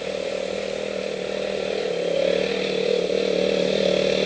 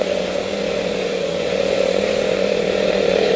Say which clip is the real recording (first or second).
first